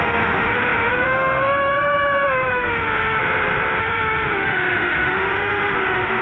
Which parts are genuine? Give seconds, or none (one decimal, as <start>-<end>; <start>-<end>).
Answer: 3.2-3.8